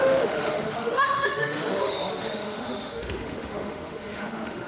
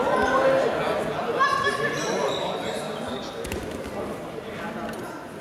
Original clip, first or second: second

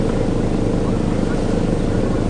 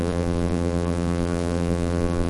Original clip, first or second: first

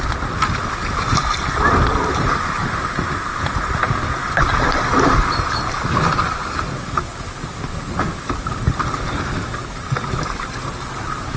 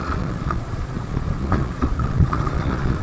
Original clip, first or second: first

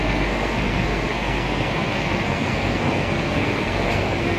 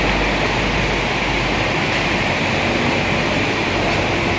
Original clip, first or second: second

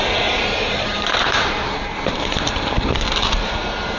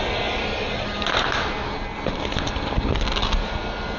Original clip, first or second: second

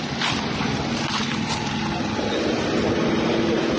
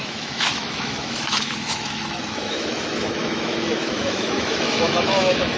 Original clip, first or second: first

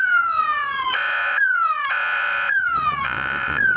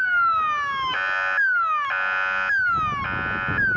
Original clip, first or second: second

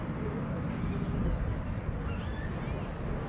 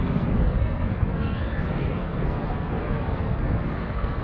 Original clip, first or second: first